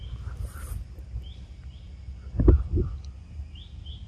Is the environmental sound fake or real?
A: real